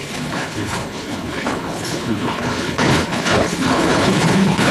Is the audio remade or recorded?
remade